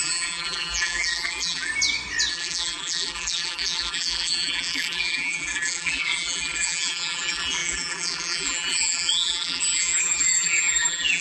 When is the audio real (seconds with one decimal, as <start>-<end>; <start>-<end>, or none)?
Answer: 1.7-2.3